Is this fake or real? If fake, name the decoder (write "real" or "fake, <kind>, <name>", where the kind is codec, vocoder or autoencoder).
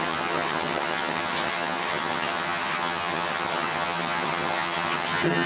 fake, vocoder, HiFi-GAN